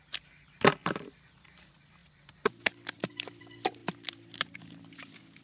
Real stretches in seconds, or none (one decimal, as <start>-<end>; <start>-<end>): 0.0-0.8; 1.6-2.0; 3.4-3.8; 4.7-5.4